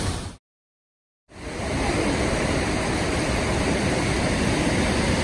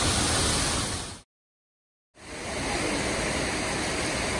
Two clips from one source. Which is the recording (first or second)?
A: second